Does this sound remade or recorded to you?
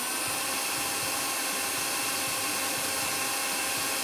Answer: recorded